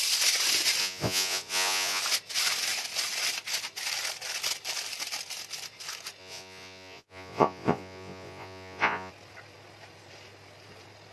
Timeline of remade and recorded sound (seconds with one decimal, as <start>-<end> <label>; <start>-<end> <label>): 0.0-0.8 recorded; 0.8-2.0 remade; 2.0-6.2 recorded; 6.2-9.1 remade; 9.1-11.1 recorded